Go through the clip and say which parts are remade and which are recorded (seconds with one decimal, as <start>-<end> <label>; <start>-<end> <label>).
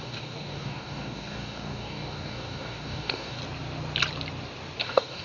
0.0-3.4 remade; 3.4-4.8 recorded; 4.8-5.2 remade